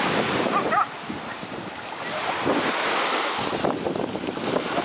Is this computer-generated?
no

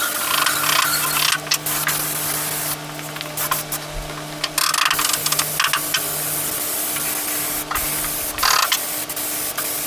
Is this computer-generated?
no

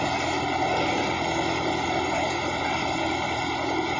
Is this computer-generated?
no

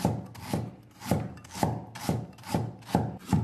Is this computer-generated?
no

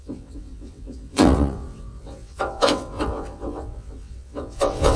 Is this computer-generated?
yes